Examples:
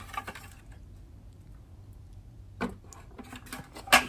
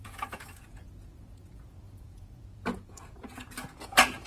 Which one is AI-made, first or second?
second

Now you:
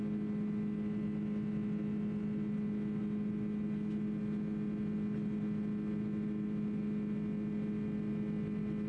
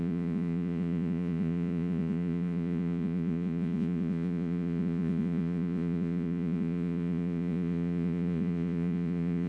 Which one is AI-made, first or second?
second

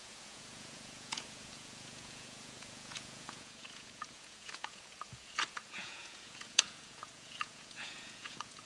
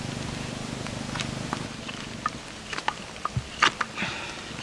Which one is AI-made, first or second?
first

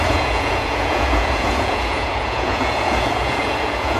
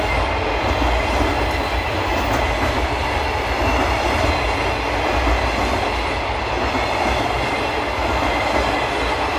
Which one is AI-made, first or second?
first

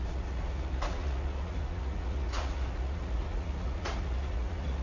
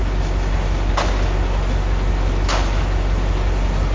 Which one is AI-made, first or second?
first